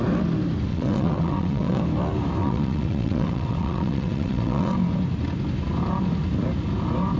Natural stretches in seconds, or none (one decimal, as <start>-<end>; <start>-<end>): 0.0-0.7; 1.8-2.4; 4.7-7.2